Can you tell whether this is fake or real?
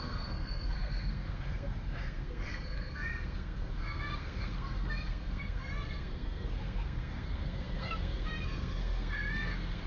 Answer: fake